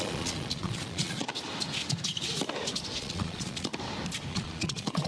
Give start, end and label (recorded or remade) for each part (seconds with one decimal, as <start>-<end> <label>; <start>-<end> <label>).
0.0-1.3 remade; 1.3-3.0 recorded; 3.0-3.7 remade; 3.7-4.3 recorded; 4.3-5.1 remade